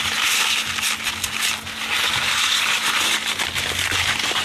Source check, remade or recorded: recorded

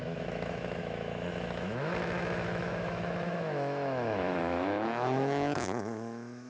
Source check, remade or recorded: remade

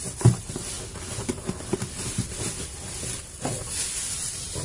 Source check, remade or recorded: recorded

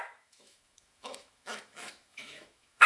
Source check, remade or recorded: remade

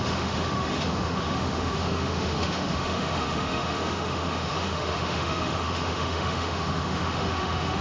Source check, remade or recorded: remade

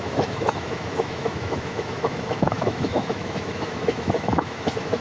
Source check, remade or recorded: remade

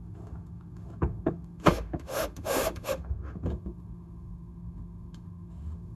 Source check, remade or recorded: remade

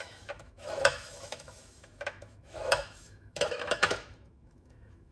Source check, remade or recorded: remade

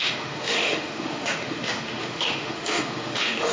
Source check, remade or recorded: remade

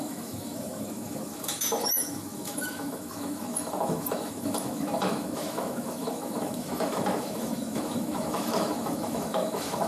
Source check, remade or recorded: remade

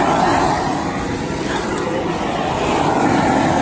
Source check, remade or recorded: recorded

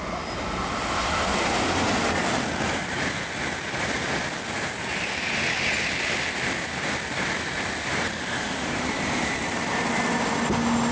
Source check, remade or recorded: recorded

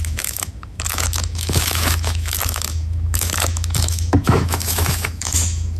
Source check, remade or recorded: remade